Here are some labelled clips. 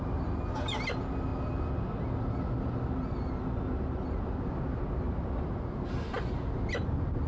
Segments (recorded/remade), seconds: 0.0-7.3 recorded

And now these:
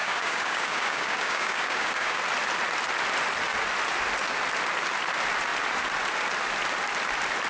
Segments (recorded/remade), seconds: 0.0-2.2 remade; 2.2-7.5 recorded

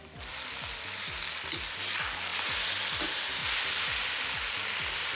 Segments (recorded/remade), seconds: 0.0-5.1 recorded

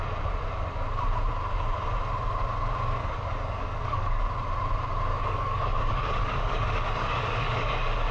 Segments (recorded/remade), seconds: 0.0-3.0 recorded; 3.0-4.2 remade; 4.2-5.1 recorded; 5.1-8.1 remade